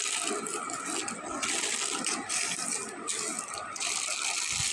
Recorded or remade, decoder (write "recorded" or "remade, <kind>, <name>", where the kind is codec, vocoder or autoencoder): recorded